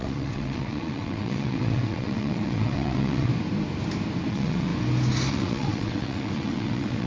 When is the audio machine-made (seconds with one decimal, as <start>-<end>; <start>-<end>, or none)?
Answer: 0.0-3.3; 4.3-4.7; 5.3-7.1